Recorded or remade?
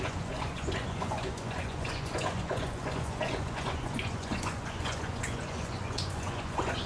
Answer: remade